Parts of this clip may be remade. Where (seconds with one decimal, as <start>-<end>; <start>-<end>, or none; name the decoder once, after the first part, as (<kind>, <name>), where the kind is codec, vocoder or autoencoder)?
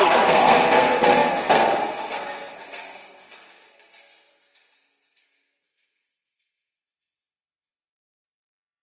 0.0-8.8 (codec, SNAC)